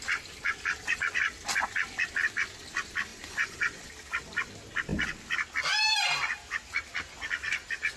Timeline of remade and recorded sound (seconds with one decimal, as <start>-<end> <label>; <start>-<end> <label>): 0.0-3.1 recorded; 3.1-3.9 remade; 3.9-8.0 recorded